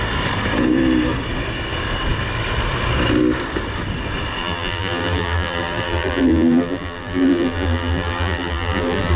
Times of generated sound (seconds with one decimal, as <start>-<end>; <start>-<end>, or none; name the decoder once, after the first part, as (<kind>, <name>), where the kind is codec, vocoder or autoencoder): 4.4-9.2 (vocoder, BigVGAN v2)